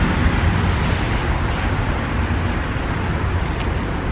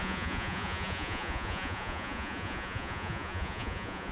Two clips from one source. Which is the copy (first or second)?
second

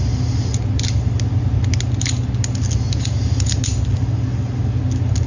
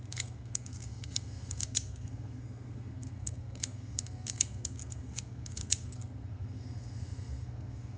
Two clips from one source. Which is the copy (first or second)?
second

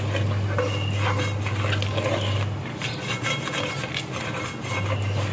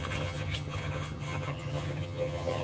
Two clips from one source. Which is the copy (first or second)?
second